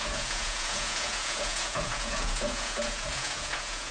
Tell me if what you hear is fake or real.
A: fake